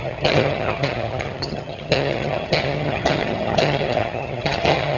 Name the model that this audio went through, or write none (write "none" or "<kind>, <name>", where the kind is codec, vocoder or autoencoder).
vocoder, HiFi-GAN